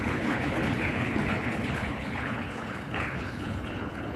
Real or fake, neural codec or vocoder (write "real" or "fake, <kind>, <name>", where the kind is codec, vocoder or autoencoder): fake, codec, HILCodec